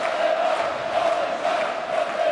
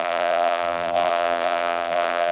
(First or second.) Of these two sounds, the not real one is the second